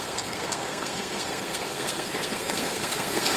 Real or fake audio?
fake